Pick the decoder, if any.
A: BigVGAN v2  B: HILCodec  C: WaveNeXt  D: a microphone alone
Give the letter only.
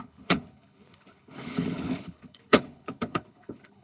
B